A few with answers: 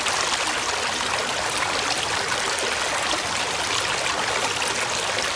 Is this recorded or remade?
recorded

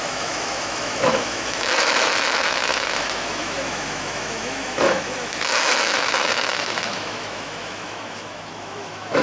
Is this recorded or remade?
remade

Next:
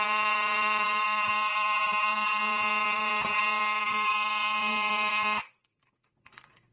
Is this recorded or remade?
remade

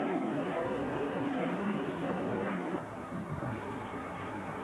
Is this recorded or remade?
remade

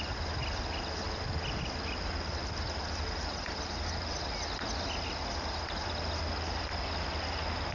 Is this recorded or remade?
recorded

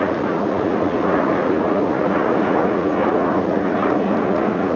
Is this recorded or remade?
remade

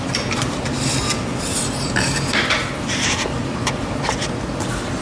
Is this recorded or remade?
recorded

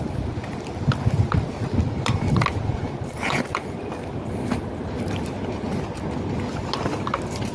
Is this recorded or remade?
recorded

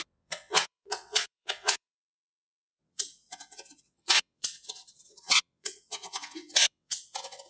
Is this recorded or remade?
remade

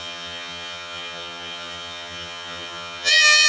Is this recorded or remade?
remade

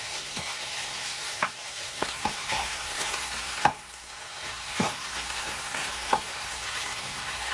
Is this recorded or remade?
remade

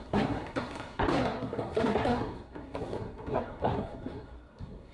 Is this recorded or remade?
remade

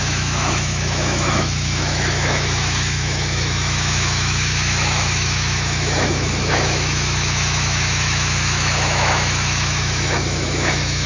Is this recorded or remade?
remade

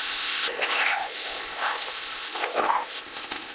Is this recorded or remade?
remade